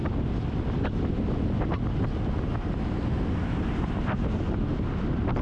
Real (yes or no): yes